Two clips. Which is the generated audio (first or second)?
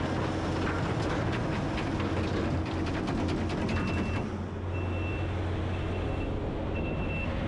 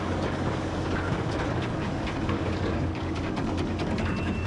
second